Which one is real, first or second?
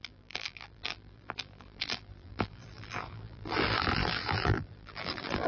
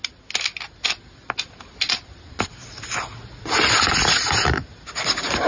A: second